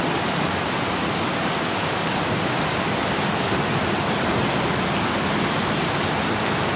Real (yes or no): yes